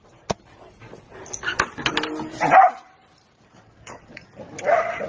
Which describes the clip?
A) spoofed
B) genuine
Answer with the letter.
B